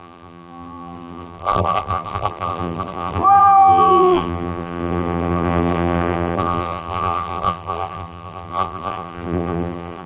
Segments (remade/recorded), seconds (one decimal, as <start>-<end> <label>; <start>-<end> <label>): 0.0-10.1 remade